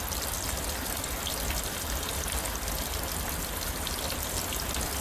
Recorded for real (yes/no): yes